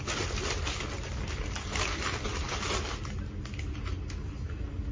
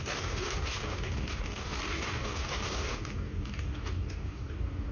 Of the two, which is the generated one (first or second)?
second